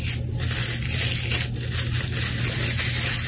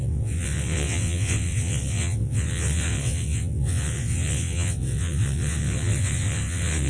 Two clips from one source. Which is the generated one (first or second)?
second